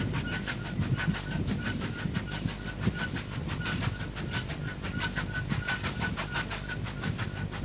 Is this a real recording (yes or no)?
yes